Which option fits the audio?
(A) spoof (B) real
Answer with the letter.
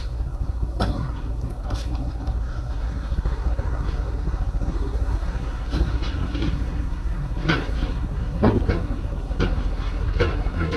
A